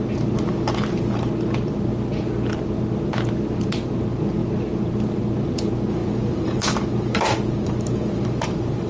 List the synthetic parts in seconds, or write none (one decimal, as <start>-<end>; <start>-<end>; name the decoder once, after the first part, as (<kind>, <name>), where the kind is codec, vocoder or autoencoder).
6.0-8.9 (vocoder, BigVGAN v2)